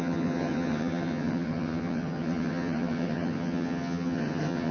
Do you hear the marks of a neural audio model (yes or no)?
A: yes